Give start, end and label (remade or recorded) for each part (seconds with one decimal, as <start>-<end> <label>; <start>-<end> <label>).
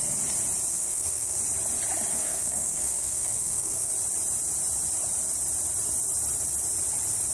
0.0-0.7 recorded; 0.7-1.4 remade; 1.4-2.1 recorded; 2.1-3.9 remade; 3.9-7.3 recorded